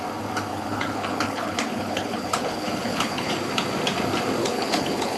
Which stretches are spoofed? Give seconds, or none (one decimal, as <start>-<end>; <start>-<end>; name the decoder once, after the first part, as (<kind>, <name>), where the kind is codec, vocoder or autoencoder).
0.5-3.3 (codec, HILCodec); 4.4-5.2